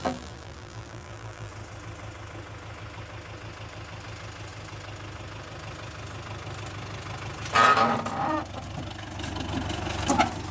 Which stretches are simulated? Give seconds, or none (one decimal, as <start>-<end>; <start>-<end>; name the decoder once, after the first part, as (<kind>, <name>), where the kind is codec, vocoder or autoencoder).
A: 0.0-1.5 (vocoder, BigVGAN v2)